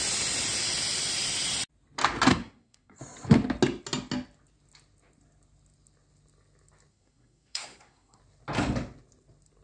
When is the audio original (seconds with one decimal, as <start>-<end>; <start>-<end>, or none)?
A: 0.0-2.3; 3.0-6.9; 8.2-9.6

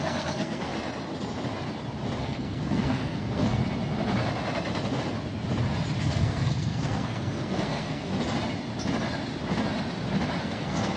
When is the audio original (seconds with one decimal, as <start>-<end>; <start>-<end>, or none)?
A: 0.7-2.2; 3.6-6.0; 8.1-10.4

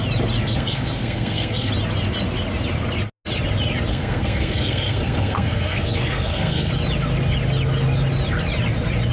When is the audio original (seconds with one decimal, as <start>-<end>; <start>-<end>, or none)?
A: 0.0-0.4; 1.7-3.9; 6.7-9.1

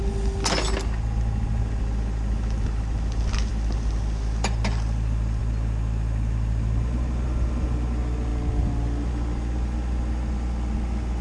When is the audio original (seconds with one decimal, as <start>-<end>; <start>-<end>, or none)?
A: 0.0-11.2

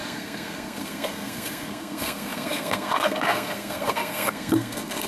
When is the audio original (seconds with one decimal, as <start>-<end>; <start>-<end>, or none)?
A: none

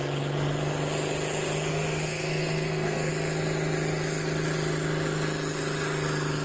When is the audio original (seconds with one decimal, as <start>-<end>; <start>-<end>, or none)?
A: 0.0-1.7; 3.1-6.4

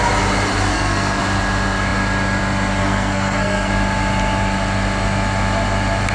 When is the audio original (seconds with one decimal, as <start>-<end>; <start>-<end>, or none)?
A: 0.0-0.7; 1.2-2.8; 3.7-6.1

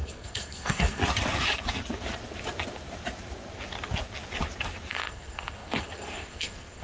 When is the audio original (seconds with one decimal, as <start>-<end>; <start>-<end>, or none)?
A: 1.0-4.9